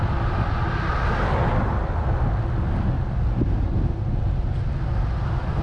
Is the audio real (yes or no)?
yes